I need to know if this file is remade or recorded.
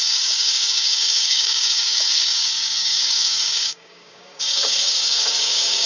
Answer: remade